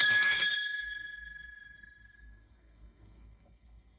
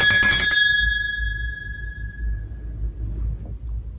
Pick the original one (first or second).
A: second